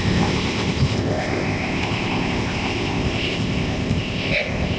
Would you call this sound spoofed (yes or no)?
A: yes